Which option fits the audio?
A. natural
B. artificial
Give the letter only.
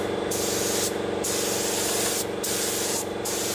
A